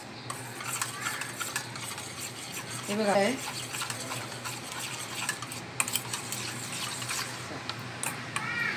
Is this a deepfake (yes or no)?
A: no